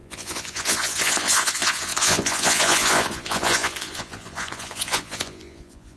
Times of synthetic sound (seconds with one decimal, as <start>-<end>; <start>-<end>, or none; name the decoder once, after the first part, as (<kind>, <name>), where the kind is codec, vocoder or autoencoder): 0.0-6.0 (vocoder, Vocos)